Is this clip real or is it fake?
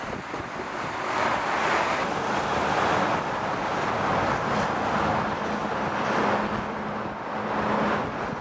real